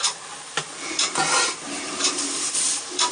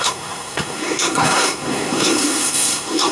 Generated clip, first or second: second